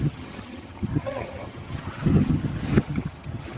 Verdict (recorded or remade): remade